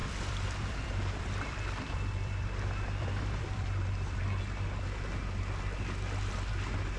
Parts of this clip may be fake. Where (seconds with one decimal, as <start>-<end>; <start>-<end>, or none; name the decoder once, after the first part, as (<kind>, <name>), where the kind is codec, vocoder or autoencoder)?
0.0-4.2 (vocoder, BigVGAN v2)